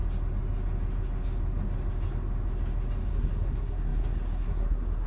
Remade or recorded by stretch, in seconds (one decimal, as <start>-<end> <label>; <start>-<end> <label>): 0.0-3.1 recorded; 3.1-5.1 remade